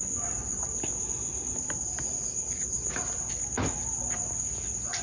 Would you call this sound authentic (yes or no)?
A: yes